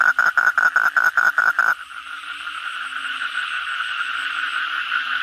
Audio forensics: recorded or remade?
recorded